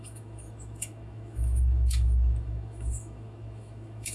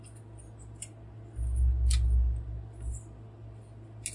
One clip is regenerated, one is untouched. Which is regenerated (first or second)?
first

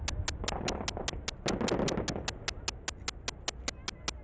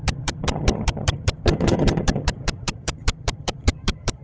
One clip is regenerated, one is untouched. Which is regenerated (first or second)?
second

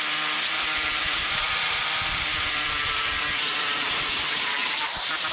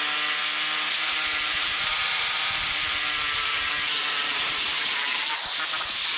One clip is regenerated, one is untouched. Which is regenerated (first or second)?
first